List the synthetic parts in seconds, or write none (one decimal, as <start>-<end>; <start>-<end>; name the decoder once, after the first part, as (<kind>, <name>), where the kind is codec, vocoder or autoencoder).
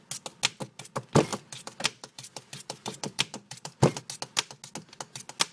1.3-4.0 (vocoder, BigVGAN v2)